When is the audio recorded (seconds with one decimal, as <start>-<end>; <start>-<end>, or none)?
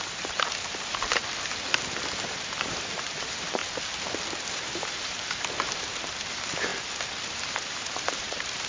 1.2-2.1; 3.6-4.5; 6.7-7.3